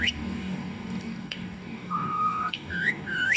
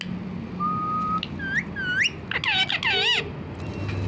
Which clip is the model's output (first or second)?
first